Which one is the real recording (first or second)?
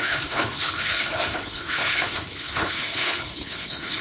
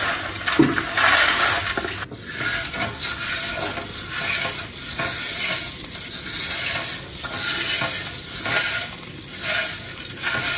second